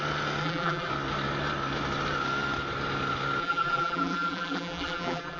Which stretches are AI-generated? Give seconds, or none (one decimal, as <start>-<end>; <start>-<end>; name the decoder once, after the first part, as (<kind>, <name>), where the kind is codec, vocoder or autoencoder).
0.4-0.9 (vocoder, BigVGAN v2); 3.4-5.4